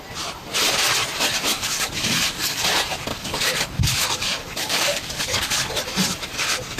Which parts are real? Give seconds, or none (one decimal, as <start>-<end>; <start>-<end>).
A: 0.0-1.5; 2.6-3.1; 5.7-6.8